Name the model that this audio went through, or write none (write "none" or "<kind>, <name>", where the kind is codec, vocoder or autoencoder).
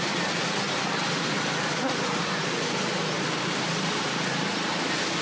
none